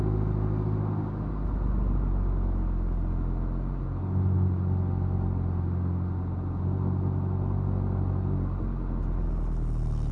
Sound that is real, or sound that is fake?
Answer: real